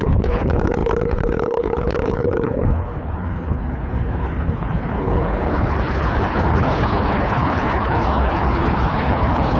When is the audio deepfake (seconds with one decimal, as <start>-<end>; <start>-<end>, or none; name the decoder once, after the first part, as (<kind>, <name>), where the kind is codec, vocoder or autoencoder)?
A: 0.0-9.6 (codec, HILCodec)

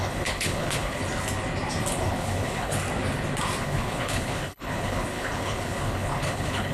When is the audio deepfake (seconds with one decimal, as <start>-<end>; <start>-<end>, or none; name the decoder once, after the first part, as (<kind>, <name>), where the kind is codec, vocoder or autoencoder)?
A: 0.0-1.0 (codec, HILCodec); 1.9-2.8; 3.6-6.7

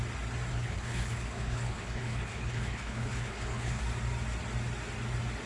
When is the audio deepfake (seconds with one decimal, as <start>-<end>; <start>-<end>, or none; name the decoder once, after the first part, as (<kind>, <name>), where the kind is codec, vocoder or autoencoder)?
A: 0.5-3.8 (codec, HILCodec)